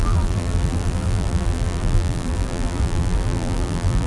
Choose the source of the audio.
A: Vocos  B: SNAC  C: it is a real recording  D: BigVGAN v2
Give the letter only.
D